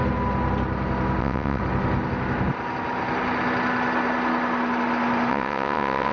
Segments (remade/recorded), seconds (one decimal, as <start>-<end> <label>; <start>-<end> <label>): 0.0-1.2 recorded; 1.2-1.6 remade; 1.6-5.3 recorded; 5.3-6.1 remade